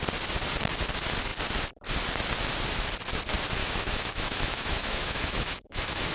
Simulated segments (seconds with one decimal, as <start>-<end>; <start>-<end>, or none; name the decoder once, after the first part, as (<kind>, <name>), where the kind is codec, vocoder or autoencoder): 3.6-6.1 (autoencoder, DAC-VAE)